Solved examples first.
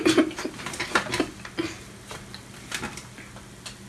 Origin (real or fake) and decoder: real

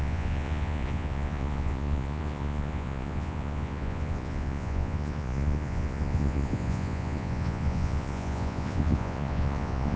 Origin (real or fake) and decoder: fake, vocoder, Vocos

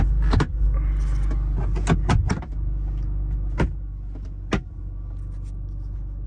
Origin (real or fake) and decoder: real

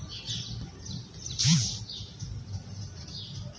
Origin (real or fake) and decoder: real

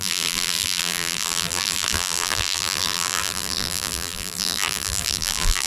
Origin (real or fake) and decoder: fake, vocoder, BigVGAN v2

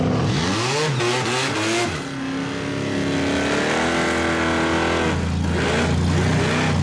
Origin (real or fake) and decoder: real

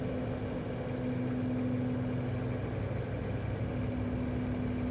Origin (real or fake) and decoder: real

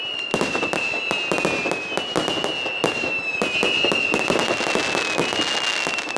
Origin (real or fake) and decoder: real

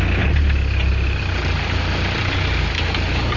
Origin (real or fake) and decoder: real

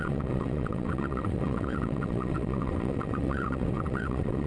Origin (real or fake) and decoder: fake, vocoder, WaveNeXt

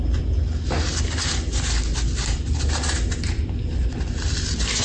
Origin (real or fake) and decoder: real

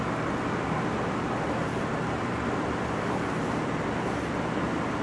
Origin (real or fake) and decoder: real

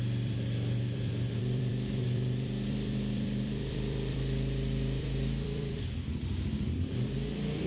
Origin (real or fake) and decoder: fake, vocoder, BigVGAN v2